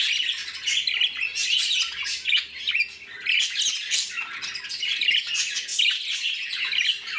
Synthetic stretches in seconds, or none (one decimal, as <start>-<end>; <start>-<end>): none